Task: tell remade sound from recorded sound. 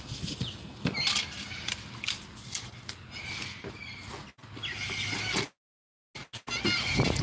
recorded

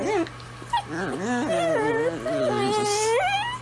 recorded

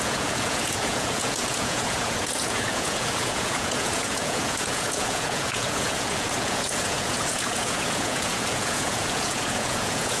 remade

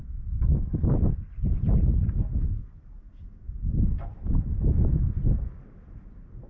recorded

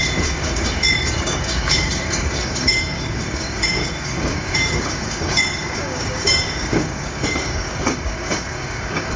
remade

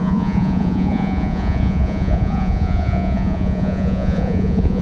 remade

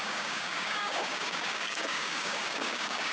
remade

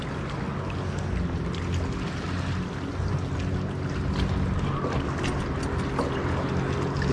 recorded